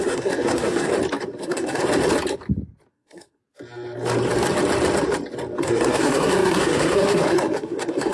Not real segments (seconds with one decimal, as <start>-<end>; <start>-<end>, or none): 0.0-0.9; 1.4-1.8; 2.9-3.4; 5.6-8.1